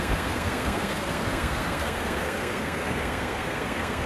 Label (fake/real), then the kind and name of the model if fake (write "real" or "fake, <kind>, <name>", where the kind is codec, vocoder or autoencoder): fake, codec, SNAC